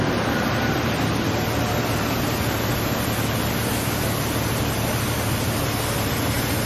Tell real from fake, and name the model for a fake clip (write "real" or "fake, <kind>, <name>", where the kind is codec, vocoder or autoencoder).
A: real